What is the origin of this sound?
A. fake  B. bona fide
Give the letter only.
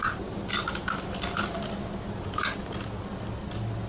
B